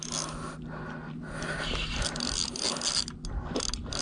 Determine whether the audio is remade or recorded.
recorded